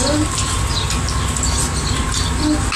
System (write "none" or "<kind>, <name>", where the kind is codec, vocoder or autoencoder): none